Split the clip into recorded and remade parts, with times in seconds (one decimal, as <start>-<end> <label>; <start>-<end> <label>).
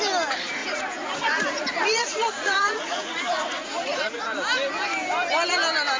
0.0-0.6 recorded; 0.6-4.2 remade; 4.2-6.0 recorded